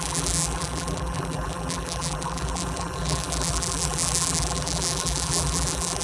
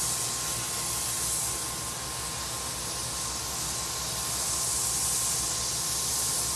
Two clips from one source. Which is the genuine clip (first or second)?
second